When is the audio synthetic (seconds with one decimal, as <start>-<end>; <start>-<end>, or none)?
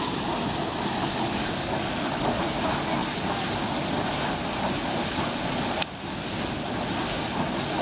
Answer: 1.0-2.4